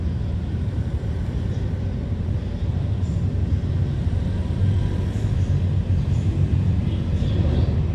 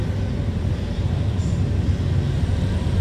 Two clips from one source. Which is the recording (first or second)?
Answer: second